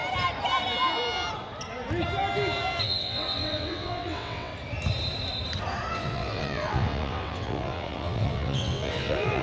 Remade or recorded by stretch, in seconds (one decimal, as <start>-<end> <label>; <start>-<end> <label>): 0.0-2.8 recorded; 2.8-4.5 remade; 4.5-5.9 recorded; 5.9-9.4 remade

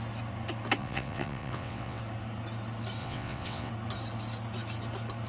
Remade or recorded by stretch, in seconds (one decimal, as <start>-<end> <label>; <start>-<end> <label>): 0.0-0.8 recorded; 0.8-2.0 remade; 2.0-3.0 recorded; 3.0-3.7 remade; 3.7-5.3 recorded

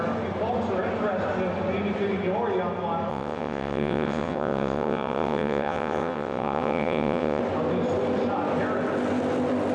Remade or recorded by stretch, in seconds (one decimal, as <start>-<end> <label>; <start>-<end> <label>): 0.0-3.1 recorded; 3.1-7.4 remade; 7.4-9.7 recorded